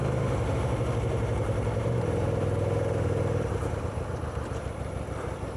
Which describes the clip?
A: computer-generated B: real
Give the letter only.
A